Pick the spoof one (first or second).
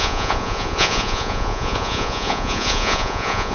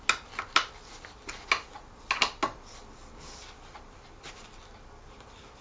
first